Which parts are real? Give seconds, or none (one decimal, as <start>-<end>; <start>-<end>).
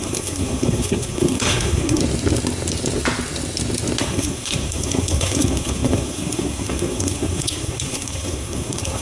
2.0-4.0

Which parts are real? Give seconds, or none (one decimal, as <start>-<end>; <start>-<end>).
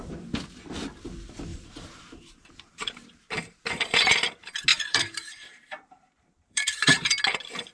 0.0-1.5; 4.1-4.7; 7.1-7.7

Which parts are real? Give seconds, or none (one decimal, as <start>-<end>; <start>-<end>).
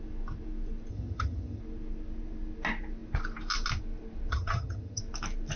0.0-0.9; 1.6-4.3; 5.0-5.6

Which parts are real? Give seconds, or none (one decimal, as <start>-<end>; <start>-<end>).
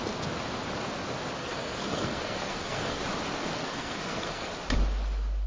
0.0-1.4; 3.0-3.4; 4.5-5.5